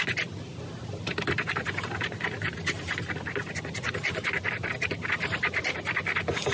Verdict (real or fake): real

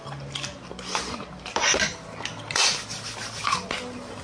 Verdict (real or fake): real